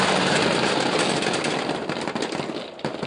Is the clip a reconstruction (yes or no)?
yes